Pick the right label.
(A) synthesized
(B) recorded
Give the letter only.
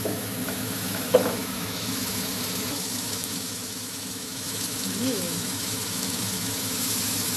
A